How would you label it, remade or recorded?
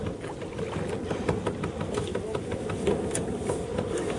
recorded